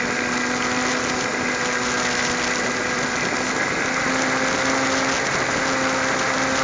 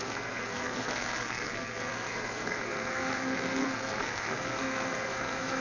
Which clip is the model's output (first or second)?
second